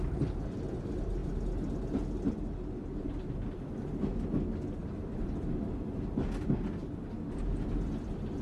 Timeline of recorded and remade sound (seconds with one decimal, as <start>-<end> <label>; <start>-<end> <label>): 0.0-8.4 recorded